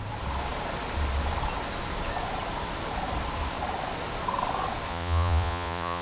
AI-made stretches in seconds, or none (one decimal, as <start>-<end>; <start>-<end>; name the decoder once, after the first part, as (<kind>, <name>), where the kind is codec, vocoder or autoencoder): 4.9-6.0 (vocoder, Vocos)